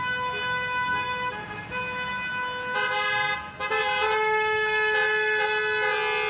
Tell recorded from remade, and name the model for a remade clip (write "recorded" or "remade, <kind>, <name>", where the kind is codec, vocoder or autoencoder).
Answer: recorded